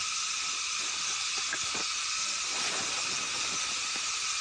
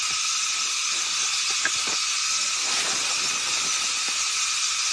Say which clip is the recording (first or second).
second